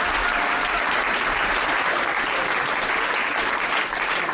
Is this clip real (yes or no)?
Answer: yes